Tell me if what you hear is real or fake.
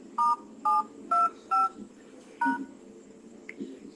fake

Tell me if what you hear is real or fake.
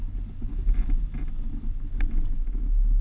real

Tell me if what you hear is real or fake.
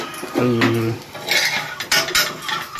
real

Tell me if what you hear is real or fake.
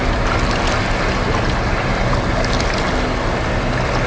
real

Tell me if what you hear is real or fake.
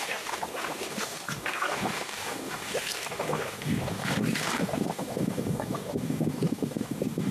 fake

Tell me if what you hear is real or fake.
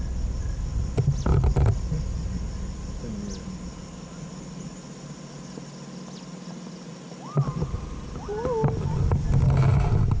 real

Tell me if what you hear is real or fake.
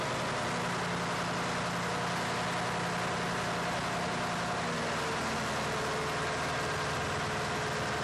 real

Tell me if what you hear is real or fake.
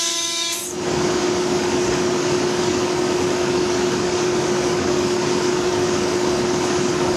fake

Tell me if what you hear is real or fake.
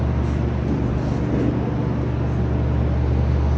real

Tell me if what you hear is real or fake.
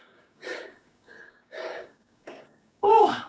fake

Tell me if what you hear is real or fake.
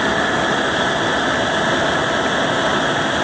real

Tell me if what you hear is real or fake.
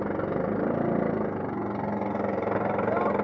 real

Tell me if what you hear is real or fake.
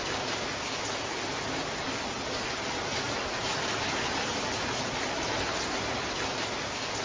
real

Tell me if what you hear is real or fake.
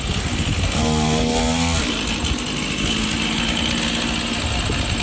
real